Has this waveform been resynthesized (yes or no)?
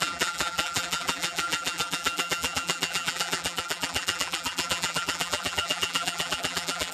yes